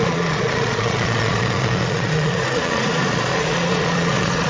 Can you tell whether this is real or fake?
fake